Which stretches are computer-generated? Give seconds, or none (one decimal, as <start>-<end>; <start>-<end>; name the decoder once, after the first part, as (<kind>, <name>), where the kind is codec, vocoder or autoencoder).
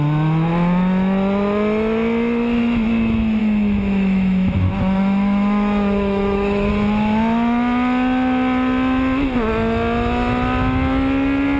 3.4-6.7 (autoencoder, DAC-VAE)